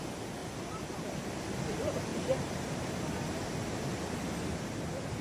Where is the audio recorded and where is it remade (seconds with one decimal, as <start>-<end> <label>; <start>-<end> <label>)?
0.0-5.2 recorded